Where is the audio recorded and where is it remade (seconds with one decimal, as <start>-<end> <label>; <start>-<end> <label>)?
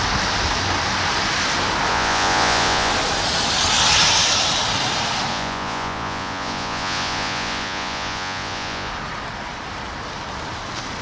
0.0-1.9 recorded; 1.9-2.9 remade; 2.9-5.3 recorded; 5.3-8.9 remade; 8.9-11.0 recorded